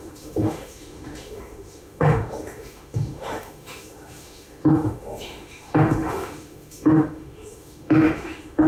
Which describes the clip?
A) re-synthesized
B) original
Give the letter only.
A